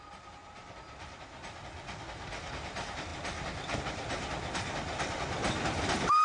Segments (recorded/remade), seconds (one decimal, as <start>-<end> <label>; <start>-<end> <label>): 0.0-6.2 recorded